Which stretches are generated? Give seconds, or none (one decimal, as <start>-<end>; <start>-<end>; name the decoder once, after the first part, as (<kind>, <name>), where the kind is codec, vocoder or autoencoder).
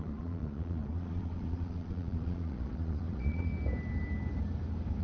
0.0-3.5 (vocoder, Vocos)